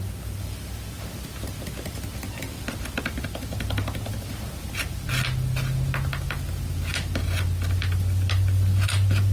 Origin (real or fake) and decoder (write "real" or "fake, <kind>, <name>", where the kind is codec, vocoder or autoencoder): real